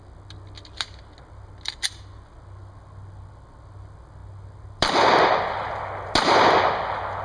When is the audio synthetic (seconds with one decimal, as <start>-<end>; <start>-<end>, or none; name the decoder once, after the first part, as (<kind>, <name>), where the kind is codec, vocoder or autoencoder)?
none